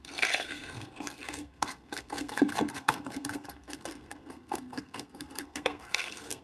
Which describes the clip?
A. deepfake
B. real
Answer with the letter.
A